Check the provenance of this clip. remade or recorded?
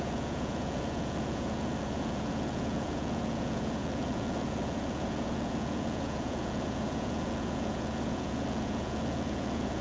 remade